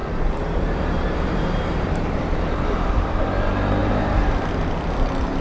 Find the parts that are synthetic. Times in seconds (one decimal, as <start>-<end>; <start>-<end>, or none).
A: 0.0-3.2; 3.8-4.5